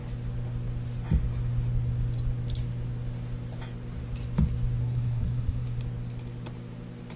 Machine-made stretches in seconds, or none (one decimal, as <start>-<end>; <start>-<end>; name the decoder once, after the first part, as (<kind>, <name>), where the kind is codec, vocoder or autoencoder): 4.8-5.8 (codec, SNAC)